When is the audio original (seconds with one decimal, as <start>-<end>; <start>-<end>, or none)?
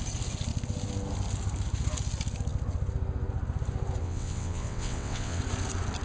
0.0-4.0; 5.4-6.0